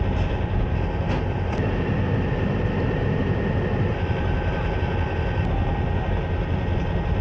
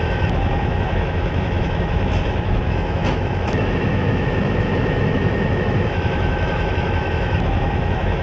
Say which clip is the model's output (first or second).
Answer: second